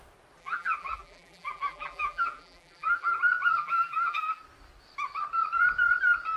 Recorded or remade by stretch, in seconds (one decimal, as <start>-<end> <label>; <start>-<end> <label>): 0.0-0.4 recorded; 0.4-3.2 remade; 3.2-3.6 recorded; 3.6-4.4 remade; 4.4-6.4 recorded